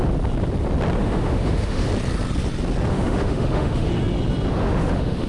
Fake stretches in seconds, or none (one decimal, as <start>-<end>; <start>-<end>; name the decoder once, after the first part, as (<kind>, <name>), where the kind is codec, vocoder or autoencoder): 1.0-1.9 (autoencoder, DAC-VAE); 2.9-3.9; 4.5-5.3